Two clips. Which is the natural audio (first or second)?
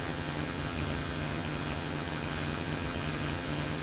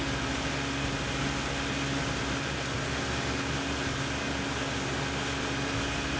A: second